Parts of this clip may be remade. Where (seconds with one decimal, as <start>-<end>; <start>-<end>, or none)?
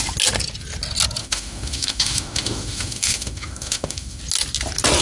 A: 1.2-4.2